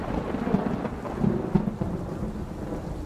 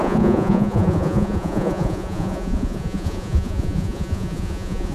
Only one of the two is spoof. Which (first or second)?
second